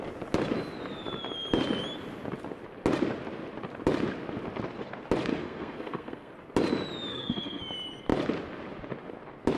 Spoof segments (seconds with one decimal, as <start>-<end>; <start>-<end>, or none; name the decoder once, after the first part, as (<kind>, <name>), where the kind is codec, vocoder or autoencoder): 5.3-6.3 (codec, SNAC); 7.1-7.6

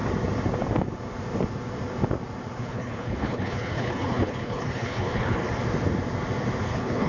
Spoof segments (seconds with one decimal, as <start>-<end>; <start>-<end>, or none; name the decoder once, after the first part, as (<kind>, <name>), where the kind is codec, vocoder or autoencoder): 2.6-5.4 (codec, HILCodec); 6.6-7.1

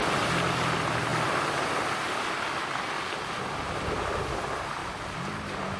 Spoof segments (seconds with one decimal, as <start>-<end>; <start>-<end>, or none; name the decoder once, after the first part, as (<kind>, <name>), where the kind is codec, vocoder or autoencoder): none